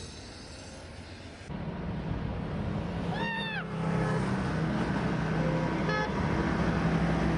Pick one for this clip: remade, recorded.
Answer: recorded